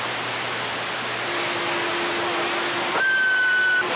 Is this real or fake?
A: real